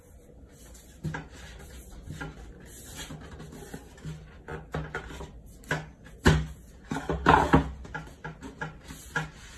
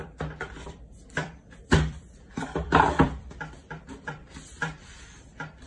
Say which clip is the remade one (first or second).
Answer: second